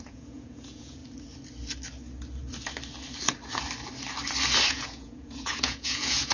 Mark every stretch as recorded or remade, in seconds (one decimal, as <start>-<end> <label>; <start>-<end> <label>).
0.0-1.0 remade; 1.0-4.7 recorded; 4.7-6.3 remade